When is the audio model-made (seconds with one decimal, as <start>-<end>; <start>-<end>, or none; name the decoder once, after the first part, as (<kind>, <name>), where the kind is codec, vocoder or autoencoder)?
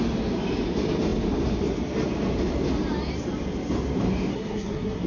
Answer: 4.3-5.1 (codec, SNAC)